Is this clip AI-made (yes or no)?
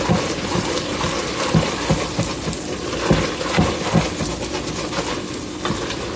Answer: no